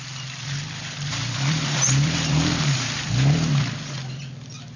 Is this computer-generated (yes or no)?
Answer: yes